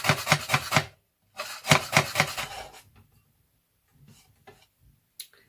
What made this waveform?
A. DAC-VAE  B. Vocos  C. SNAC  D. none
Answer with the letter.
D